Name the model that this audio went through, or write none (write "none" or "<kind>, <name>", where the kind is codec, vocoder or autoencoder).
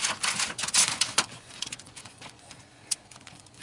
vocoder, Vocos